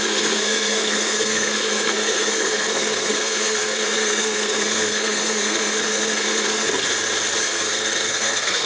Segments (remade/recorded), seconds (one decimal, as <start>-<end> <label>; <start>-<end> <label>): 0.0-6.6 remade; 6.6-7.4 recorded; 7.4-8.7 remade